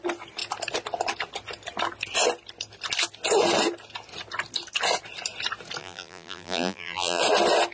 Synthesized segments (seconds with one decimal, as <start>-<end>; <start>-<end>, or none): 5.8-7.2